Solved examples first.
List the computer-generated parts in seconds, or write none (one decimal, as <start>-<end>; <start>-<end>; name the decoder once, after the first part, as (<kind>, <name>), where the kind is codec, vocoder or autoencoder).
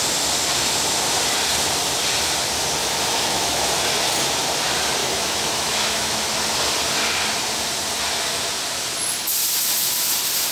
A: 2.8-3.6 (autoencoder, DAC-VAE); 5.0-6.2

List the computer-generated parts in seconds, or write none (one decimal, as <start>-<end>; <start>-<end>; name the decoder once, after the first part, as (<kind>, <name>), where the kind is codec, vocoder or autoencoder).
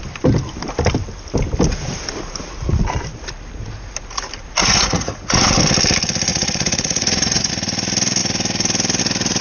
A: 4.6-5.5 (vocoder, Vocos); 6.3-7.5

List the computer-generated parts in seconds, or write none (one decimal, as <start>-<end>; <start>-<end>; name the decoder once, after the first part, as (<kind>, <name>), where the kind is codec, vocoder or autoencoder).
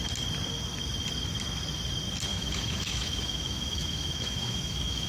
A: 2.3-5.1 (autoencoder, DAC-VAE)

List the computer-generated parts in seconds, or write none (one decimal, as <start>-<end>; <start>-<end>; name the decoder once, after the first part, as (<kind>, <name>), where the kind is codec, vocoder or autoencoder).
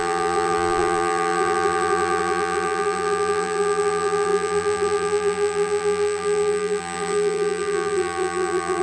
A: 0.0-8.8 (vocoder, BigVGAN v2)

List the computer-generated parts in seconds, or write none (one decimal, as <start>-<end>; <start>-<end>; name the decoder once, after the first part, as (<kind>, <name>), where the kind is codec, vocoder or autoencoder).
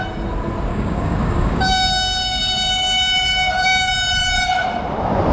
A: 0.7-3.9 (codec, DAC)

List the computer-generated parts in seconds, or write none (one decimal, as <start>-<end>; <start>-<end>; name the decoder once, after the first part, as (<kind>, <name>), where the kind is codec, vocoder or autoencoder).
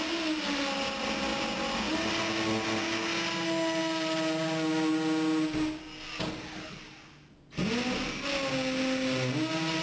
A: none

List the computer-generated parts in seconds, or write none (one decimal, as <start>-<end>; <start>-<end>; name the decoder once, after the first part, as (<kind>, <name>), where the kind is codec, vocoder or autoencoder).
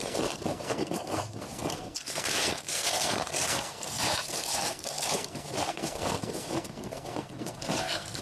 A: 0.0-8.2 (codec, SNAC)